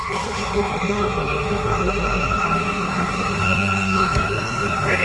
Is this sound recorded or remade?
remade